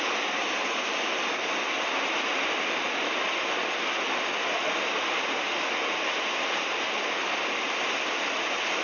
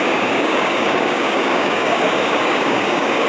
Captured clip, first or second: first